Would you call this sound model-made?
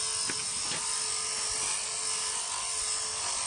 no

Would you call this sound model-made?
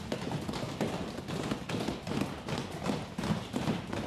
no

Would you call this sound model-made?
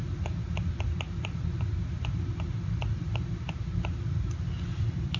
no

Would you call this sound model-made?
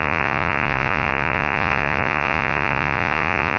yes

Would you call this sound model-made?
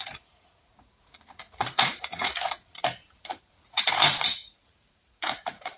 yes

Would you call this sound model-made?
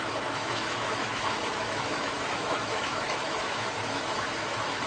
yes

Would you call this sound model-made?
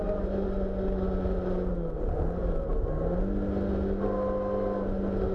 no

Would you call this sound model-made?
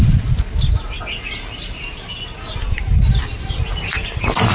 no